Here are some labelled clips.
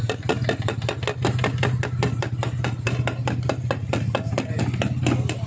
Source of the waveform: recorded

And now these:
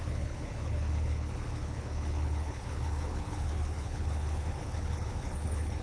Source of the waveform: remade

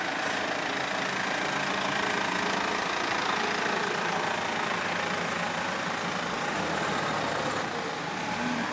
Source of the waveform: remade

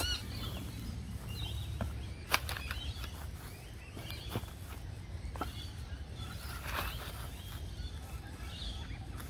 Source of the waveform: recorded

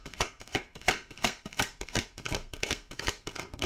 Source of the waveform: remade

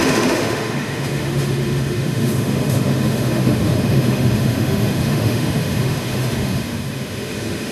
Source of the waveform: remade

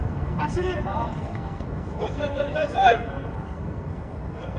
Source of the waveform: remade